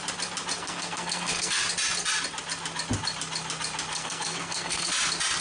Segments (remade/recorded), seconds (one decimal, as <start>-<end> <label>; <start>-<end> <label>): 0.0-0.6 recorded; 0.6-1.6 remade; 1.6-3.9 recorded; 3.9-4.9 remade; 4.9-5.4 recorded